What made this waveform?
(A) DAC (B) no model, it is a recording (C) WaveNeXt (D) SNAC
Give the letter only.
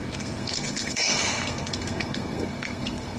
D